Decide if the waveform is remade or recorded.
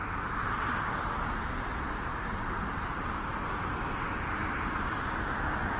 recorded